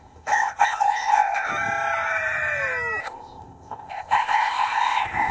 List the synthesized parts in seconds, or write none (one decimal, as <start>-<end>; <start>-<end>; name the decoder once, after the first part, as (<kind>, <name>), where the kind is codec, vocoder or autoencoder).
0.0-1.5 (codec, ZipCodec); 3.0-5.3